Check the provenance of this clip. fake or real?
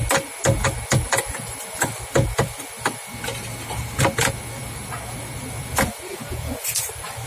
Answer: real